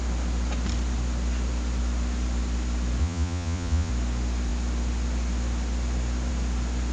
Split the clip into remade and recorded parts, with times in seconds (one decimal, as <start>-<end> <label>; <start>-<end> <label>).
0.0-3.0 recorded; 3.0-3.9 remade; 3.9-6.9 recorded

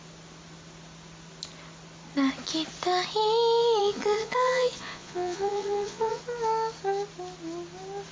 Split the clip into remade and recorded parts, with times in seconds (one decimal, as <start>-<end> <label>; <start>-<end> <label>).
0.0-3.8 recorded; 3.8-6.2 remade; 6.2-8.1 recorded